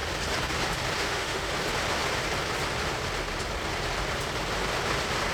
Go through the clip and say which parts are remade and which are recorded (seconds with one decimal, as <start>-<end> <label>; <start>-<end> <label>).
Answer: 0.0-1.0 recorded; 1.0-1.5 remade; 1.5-5.3 recorded